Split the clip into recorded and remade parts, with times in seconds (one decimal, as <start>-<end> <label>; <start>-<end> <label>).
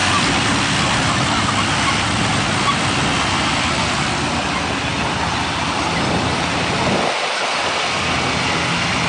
0.0-9.1 recorded